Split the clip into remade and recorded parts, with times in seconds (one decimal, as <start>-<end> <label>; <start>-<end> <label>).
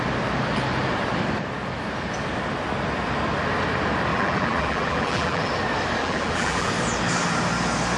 0.0-4.1 recorded; 4.1-5.5 remade; 5.5-6.0 recorded; 6.0-6.7 remade; 6.7-8.0 recorded